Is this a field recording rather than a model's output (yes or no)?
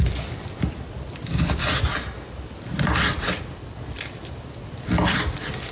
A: yes